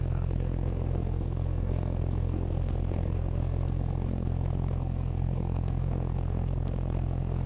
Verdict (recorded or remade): remade